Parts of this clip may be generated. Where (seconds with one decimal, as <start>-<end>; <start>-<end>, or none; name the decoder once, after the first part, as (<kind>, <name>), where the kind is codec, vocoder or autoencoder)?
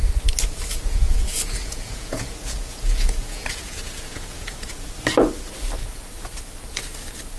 0.7-4.9 (vocoder, Vocos)